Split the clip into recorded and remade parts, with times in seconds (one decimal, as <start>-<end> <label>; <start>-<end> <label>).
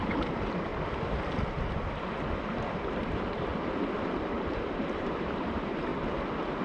0.0-0.7 remade; 0.7-2.6 recorded; 2.6-3.5 remade; 3.5-4.3 recorded; 4.3-5.9 remade; 5.9-6.6 recorded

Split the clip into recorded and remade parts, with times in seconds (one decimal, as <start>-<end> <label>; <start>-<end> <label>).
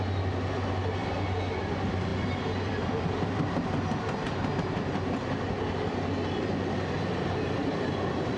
0.0-1.0 recorded; 1.0-1.7 remade; 1.7-2.1 recorded; 2.1-4.5 remade; 4.5-7.6 recorded; 7.6-8.4 remade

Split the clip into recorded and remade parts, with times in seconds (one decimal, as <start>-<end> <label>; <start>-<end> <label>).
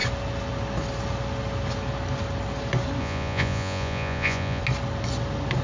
0.0-3.0 recorded; 3.0-4.6 remade; 4.6-5.6 recorded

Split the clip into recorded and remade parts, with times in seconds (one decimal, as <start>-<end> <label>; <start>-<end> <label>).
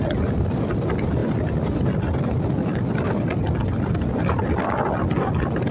0.0-5.7 recorded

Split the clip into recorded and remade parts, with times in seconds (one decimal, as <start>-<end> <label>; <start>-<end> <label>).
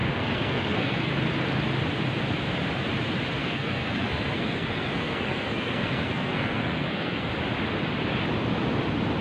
0.0-1.1 remade; 1.1-3.4 recorded; 3.4-7.3 remade; 7.3-9.2 recorded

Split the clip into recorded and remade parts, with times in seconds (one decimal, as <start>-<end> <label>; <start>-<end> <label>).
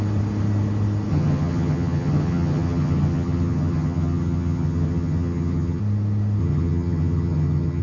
0.0-1.1 recorded; 1.1-5.8 remade; 5.8-6.4 recorded; 6.4-7.8 remade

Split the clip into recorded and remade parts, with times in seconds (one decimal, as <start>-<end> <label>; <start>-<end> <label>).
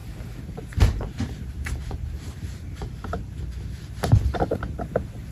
0.0-3.2 remade; 3.2-5.3 recorded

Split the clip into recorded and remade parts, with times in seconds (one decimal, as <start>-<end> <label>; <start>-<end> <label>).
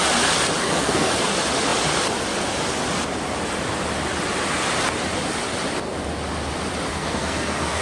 0.0-0.6 recorded; 0.6-1.1 remade; 1.1-6.9 recorded; 6.9-7.8 remade